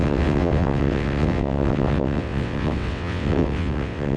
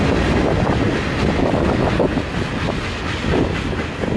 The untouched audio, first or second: second